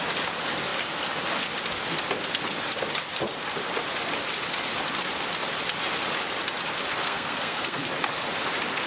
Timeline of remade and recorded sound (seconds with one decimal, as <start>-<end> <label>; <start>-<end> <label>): 0.0-6.9 recorded; 6.9-7.8 remade; 7.8-8.9 recorded